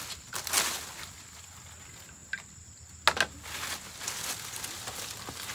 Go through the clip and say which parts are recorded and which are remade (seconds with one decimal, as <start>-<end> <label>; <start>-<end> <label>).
0.0-2.2 recorded; 2.2-3.0 remade; 3.0-5.5 recorded